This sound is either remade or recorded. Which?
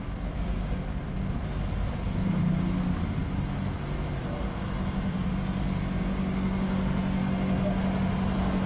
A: recorded